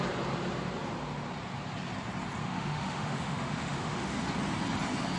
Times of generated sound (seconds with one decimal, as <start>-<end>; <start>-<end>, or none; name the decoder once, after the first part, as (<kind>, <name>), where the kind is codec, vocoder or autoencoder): 2.4-4.2 (autoencoder, DAC-VAE)